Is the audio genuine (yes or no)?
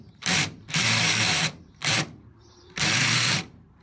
no